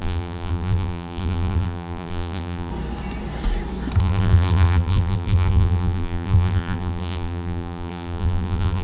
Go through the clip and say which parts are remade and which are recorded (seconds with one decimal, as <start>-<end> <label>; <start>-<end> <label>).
0.0-2.7 remade; 2.7-4.0 recorded; 4.0-8.8 remade